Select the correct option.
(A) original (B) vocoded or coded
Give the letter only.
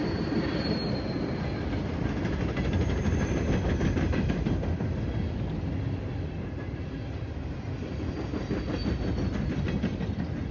A